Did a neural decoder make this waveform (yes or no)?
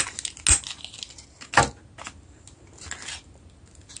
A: no